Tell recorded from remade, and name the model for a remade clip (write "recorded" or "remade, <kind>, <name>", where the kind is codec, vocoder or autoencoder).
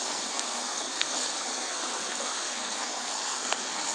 remade, codec, SNAC